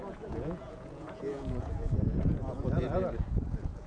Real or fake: fake